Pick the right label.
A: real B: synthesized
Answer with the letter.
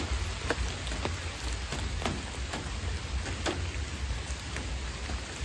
A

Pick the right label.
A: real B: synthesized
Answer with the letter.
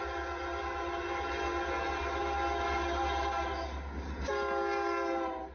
A